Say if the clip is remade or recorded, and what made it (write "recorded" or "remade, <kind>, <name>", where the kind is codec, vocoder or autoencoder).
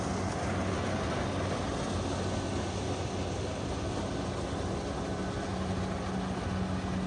recorded